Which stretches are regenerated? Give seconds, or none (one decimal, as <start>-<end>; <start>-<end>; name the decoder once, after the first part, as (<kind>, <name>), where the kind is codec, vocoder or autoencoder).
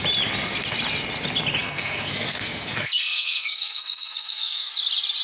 1.6-4.7 (codec, SNAC)